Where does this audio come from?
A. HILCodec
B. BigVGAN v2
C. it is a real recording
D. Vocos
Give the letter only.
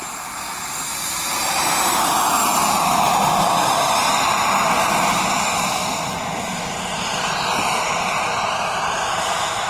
C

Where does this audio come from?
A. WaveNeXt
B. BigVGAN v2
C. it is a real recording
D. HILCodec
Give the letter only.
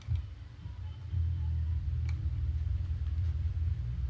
B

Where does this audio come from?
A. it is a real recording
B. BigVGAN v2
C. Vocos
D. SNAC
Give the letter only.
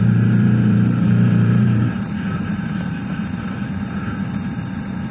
B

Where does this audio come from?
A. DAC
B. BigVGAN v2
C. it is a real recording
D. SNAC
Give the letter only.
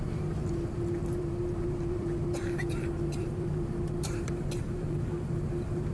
B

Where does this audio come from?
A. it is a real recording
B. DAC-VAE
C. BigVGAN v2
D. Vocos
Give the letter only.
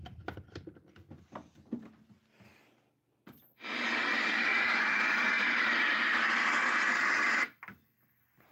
A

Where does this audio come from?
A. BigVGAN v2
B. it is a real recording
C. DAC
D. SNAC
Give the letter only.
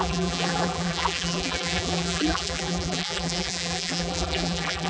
A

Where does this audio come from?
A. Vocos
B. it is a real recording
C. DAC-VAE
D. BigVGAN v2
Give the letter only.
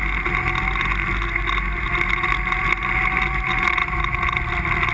B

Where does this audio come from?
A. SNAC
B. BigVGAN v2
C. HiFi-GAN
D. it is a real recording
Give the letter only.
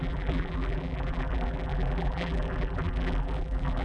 B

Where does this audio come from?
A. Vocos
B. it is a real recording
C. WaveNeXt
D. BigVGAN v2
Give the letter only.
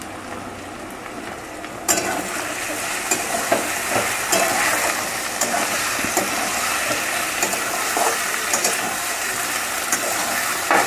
B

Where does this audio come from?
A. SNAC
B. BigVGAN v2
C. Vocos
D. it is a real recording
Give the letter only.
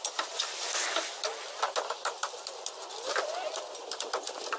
D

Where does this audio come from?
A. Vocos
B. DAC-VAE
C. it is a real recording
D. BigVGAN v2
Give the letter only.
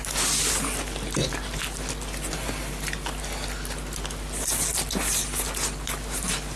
C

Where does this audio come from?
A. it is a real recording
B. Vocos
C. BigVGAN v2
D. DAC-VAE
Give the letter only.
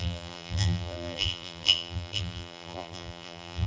C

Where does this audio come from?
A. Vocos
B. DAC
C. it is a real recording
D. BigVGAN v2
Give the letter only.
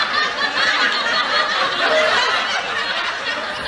C